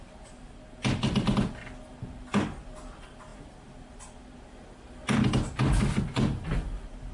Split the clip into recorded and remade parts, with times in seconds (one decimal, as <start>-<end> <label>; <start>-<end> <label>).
0.0-7.1 recorded